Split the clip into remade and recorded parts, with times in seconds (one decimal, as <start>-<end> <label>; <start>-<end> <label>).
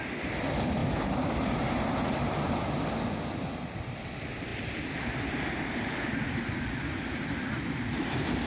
0.0-8.5 recorded